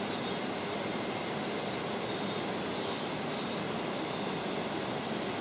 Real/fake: real